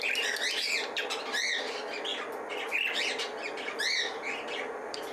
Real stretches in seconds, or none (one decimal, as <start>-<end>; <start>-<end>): 2.1-3.0